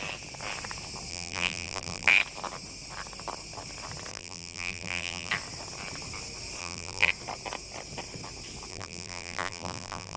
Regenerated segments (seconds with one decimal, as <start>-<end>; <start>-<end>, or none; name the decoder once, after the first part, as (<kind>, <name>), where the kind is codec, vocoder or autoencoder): 1.1-2.1 (vocoder, BigVGAN v2); 4.1-5.3; 6.6-7.1; 8.7-10.2

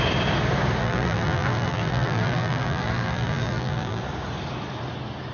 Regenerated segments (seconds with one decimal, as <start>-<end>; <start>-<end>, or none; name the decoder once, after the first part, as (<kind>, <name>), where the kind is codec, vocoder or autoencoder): 0.8-4.0 (vocoder, BigVGAN v2)

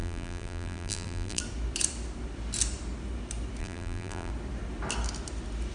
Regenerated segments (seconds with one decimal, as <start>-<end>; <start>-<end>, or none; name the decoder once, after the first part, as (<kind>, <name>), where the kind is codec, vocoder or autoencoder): 0.0-1.4 (vocoder, BigVGAN v2); 3.6-4.3

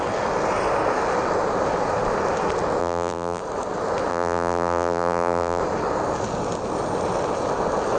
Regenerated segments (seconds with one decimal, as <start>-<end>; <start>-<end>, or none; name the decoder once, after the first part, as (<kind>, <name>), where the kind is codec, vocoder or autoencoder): 2.8-3.4 (vocoder, BigVGAN v2); 4.1-5.6

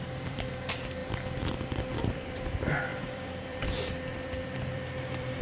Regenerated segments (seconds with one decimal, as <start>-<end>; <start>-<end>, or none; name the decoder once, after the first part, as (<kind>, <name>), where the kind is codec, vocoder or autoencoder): 0.0-1.0 (vocoder, BigVGAN v2); 2.0-5.4

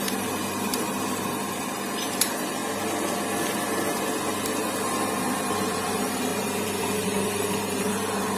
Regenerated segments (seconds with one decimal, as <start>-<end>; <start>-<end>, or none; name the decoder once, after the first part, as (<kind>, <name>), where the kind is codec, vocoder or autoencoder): 0.0-2.6 (vocoder, BigVGAN v2); 5.4-6.3; 6.8-8.4

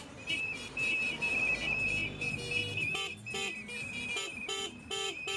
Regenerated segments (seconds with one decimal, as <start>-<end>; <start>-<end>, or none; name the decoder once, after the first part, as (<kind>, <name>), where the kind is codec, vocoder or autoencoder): 0.0-2.0 (vocoder, BigVGAN v2)

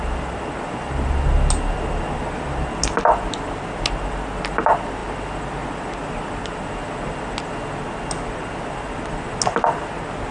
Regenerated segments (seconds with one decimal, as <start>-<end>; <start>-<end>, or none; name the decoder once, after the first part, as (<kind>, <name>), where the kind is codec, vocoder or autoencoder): none